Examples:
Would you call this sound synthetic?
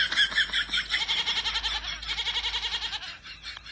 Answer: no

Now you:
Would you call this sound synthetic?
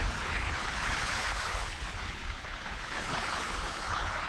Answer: yes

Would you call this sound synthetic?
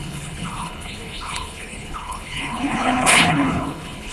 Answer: yes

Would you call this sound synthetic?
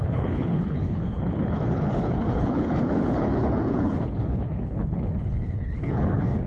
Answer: yes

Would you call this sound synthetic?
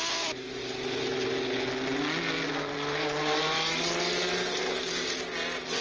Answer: no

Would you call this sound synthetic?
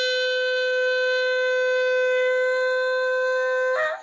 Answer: no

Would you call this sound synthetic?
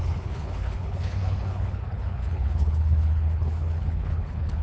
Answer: yes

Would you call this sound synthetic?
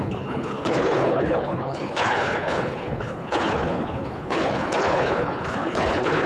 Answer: yes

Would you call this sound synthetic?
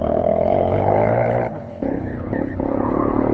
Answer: yes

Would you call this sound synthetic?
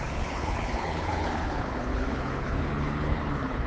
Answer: yes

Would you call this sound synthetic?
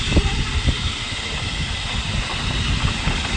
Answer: no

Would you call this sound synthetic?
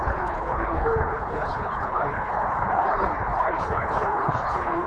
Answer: yes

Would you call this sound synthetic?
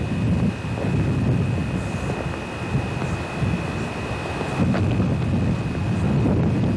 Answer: no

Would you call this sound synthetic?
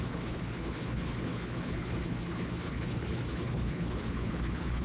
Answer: yes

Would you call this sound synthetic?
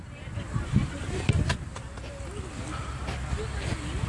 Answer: no